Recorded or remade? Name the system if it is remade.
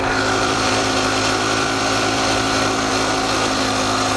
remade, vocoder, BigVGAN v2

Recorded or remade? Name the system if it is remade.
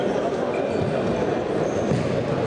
recorded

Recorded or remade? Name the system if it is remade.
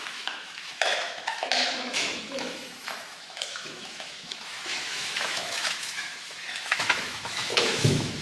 remade, autoencoder, DAC-VAE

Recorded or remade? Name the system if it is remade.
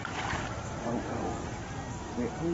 recorded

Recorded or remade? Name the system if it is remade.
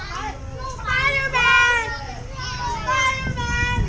recorded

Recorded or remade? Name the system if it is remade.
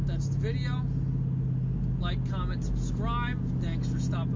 recorded